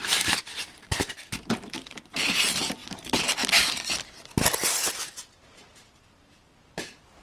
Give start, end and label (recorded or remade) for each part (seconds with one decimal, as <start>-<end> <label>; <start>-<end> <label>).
0.0-2.8 remade; 2.8-5.3 recorded; 5.3-7.2 remade